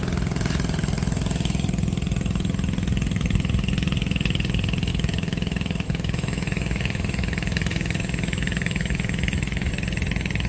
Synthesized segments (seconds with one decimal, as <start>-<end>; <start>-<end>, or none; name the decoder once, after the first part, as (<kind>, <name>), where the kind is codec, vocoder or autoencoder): 4.9-9.7 (autoencoder, DAC-VAE)